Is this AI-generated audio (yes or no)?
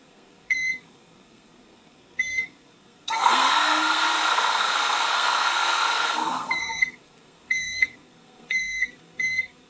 yes